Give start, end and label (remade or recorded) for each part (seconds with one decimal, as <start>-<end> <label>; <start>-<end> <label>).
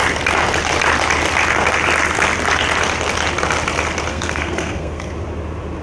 0.0-4.1 recorded; 4.1-5.1 remade; 5.1-5.8 recorded